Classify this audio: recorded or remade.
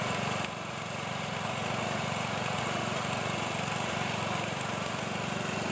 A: remade